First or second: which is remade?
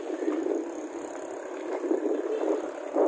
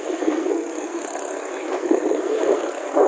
second